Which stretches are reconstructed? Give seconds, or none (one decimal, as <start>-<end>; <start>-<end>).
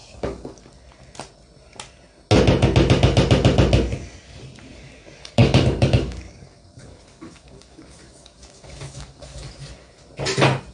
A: 0.0-0.6; 4.7-9.9